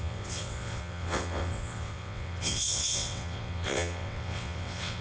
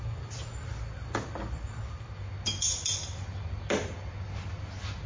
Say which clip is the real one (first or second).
second